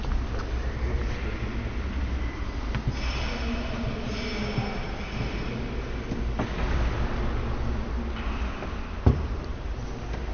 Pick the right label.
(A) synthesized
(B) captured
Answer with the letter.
B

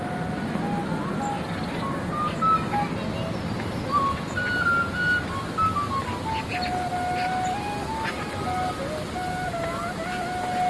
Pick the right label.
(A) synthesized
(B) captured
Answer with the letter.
B